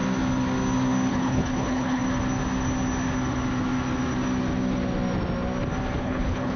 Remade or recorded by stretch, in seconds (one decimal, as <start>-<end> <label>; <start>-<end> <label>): 0.0-1.1 recorded; 1.1-2.0 remade; 2.0-6.0 recorded; 6.0-6.6 remade